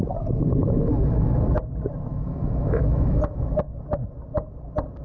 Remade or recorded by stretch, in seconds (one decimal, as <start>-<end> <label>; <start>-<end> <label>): 0.0-0.6 recorded; 0.6-1.4 remade; 1.4-2.1 recorded; 2.1-3.6 remade; 3.6-5.0 recorded